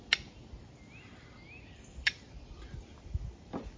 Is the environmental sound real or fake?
real